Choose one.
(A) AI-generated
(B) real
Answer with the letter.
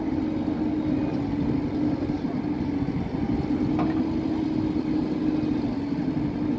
B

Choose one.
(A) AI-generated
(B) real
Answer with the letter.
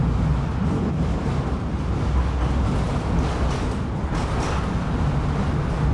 B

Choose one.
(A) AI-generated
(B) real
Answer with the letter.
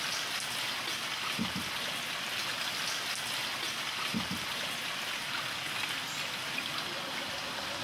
B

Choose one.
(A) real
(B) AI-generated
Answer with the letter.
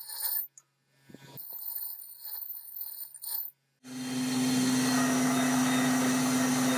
A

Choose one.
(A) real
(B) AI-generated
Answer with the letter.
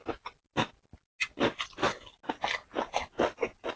A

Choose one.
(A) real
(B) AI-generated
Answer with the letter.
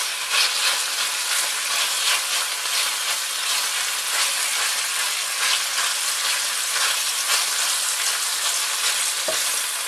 A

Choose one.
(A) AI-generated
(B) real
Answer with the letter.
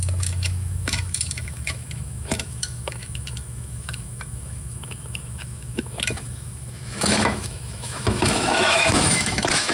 A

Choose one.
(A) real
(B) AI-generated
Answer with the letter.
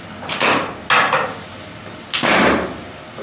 A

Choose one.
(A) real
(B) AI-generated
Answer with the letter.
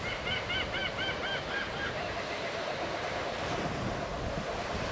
A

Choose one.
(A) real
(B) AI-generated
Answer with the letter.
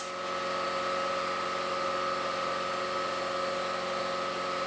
A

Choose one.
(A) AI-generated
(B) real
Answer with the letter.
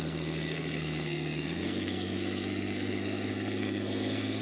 A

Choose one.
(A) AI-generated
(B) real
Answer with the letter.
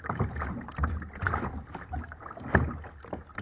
B